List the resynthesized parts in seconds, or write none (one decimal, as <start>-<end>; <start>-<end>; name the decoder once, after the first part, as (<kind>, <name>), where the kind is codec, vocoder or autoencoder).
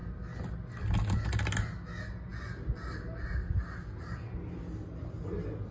none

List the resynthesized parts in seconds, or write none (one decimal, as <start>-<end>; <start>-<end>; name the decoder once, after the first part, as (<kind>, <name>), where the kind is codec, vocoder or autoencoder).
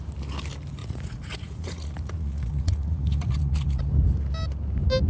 0.8-3.9 (vocoder, Vocos)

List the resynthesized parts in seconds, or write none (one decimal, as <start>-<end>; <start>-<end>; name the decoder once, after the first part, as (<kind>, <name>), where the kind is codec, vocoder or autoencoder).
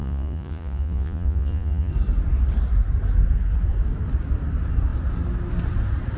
0.0-1.9 (vocoder, Vocos)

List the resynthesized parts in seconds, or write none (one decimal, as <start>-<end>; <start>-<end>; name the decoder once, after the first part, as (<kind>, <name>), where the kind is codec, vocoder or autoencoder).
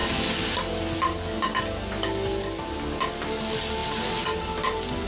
none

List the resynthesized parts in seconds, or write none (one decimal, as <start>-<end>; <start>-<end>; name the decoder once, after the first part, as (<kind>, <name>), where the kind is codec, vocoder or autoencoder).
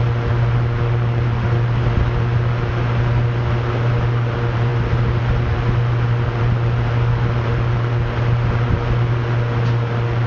none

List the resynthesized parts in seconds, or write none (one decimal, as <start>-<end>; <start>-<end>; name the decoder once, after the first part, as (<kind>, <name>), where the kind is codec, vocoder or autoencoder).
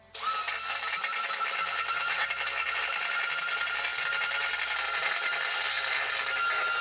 none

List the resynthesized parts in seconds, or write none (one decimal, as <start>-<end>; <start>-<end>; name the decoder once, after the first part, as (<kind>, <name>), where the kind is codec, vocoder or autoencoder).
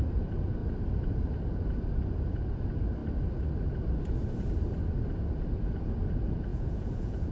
6.5-7.3 (vocoder, Vocos)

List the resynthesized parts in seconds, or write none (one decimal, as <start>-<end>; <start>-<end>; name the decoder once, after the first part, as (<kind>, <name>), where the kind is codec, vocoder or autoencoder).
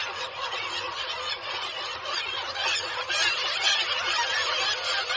0.0-3.1 (vocoder, Vocos)